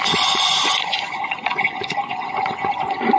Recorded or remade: remade